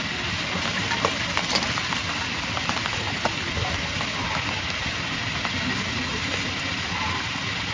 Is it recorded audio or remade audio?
recorded